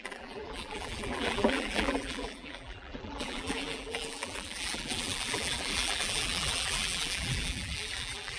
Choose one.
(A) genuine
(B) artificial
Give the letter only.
B